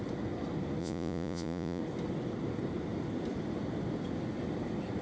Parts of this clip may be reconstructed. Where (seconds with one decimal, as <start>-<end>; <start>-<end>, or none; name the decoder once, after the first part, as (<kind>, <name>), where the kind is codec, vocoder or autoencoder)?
0.8-1.8 (vocoder, Vocos)